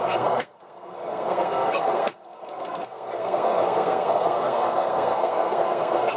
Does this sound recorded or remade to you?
remade